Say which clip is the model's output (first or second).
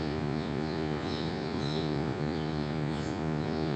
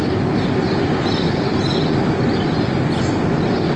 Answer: first